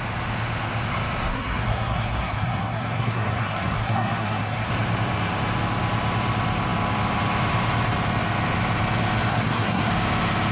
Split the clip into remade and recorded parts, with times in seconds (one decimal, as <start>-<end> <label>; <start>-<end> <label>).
0.0-1.3 recorded; 1.3-4.7 remade; 4.7-9.3 recorded; 9.3-9.9 remade; 9.9-10.5 recorded